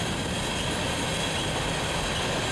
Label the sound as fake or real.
real